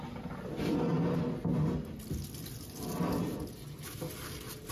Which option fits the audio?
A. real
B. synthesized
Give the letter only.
A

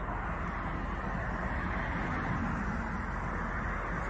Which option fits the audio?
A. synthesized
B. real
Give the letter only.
B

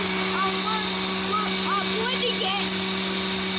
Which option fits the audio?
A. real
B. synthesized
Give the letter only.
A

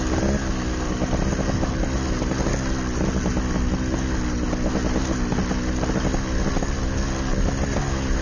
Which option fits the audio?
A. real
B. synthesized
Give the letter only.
A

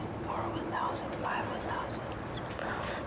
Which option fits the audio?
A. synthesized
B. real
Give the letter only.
B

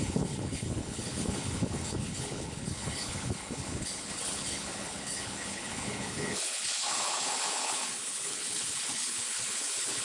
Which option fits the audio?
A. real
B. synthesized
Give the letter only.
B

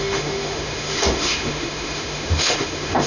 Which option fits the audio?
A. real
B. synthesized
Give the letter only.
B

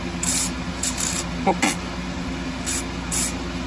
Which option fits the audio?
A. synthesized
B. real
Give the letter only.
B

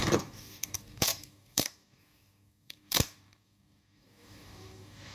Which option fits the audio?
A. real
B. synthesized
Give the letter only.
B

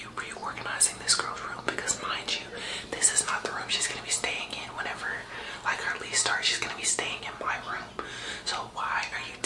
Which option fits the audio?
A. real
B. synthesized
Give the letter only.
A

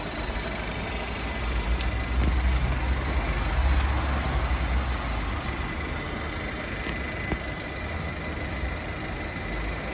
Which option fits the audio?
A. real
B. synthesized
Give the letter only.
A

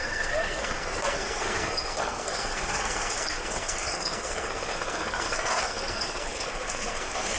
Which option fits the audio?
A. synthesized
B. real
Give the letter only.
A